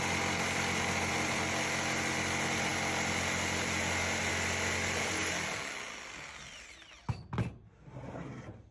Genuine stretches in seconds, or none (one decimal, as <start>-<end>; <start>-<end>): 0.0-8.7